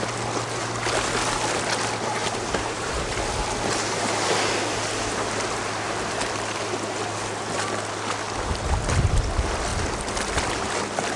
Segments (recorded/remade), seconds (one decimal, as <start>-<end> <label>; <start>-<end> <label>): 0.0-2.2 recorded; 2.2-2.9 remade; 2.9-11.2 recorded